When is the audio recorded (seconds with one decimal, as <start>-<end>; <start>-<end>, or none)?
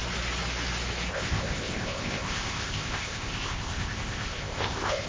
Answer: 0.0-1.1